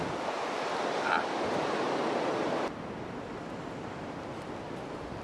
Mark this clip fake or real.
real